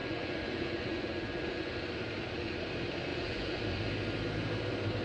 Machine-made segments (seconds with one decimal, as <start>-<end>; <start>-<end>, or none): 0.0-1.7; 3.1-3.9